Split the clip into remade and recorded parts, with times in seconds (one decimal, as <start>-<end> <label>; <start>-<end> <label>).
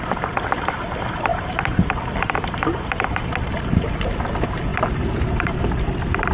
0.0-6.3 recorded